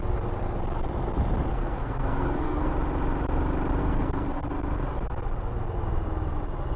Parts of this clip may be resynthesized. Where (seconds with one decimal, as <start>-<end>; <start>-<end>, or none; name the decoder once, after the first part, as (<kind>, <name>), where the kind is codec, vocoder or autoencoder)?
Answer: 1.5-2.7 (codec, SNAC); 3.8-4.5